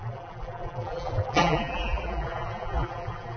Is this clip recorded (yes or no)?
no